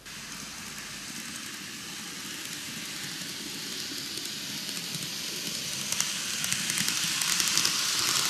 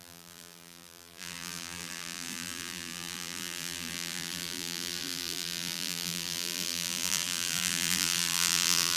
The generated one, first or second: second